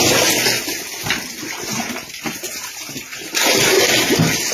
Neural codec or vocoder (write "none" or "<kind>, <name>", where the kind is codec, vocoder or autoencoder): none